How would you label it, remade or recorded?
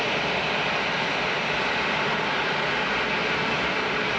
recorded